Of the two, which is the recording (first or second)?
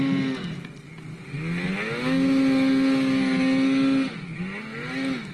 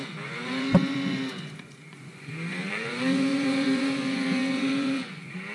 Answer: first